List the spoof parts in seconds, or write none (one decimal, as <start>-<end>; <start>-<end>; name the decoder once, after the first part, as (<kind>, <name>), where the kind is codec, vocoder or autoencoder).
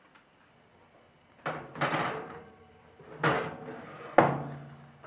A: 0.7-3.8 (vocoder, BigVGAN v2)